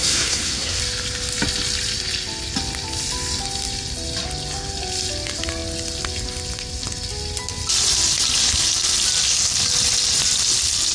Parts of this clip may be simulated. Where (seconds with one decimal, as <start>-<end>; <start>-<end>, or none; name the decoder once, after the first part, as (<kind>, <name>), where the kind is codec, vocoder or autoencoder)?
0.0-0.8 (codec, SNAC)